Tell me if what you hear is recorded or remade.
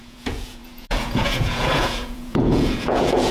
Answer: remade